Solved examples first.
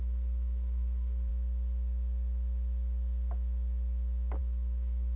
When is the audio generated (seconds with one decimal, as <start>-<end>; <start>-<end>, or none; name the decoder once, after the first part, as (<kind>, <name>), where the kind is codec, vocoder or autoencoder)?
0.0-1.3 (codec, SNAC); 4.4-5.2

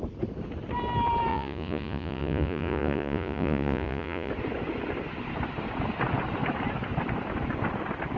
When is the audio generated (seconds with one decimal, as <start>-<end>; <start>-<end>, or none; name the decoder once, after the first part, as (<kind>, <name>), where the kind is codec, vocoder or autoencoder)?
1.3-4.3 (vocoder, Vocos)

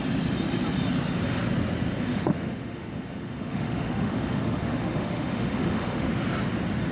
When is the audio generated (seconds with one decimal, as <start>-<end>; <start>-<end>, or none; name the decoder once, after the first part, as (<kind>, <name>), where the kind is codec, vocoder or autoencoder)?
2.1-6.1 (autoencoder, DAC-VAE)

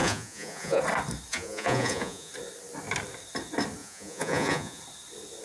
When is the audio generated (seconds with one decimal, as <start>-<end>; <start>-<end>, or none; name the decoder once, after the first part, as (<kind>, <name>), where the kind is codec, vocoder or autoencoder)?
0.0-0.8 (vocoder, Vocos); 1.3-2.3; 3.8-4.8

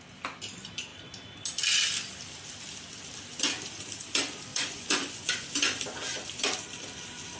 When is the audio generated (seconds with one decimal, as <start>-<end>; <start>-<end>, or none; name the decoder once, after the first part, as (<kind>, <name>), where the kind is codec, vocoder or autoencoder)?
4.5-5.8 (vocoder, Vocos)